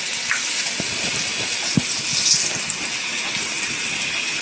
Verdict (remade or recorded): recorded